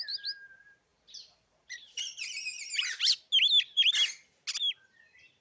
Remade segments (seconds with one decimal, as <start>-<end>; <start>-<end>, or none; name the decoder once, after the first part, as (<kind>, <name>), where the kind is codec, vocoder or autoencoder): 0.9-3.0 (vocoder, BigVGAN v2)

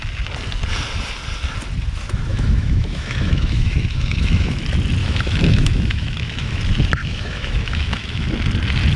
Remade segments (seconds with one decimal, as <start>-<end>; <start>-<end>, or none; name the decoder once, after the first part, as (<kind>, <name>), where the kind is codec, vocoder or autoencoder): 2.3-4.6 (autoencoder, DAC-VAE); 5.0-6.6; 7.0-8.3

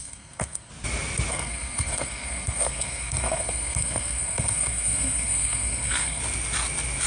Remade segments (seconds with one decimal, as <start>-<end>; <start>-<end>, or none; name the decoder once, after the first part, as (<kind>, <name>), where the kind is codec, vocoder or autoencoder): 0.0-0.7 (codec, SNAC); 1.3-6.2

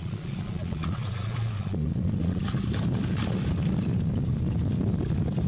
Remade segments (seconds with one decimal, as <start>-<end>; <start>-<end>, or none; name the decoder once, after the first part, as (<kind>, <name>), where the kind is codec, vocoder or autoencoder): 0.0-2.4 (vocoder, Vocos)

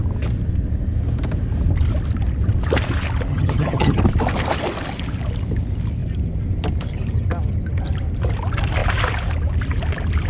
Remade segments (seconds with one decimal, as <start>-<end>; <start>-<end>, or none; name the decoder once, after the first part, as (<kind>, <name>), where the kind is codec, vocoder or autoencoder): 3.3-4.0 (vocoder, HiFi-GAN)

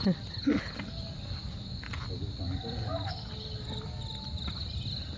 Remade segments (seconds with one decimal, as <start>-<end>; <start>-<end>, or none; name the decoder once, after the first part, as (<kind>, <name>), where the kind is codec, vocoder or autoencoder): none

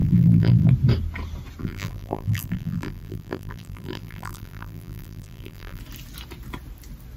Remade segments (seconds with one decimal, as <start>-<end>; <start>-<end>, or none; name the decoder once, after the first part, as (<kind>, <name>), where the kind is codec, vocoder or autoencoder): 0.0-0.7 (vocoder, BigVGAN v2); 1.6-5.8

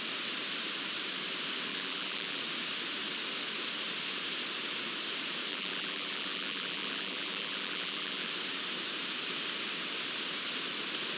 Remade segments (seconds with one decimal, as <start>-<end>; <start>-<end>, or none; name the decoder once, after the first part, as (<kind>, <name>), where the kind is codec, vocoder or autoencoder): 1.7-2.4 (vocoder, BigVGAN v2); 5.5-8.3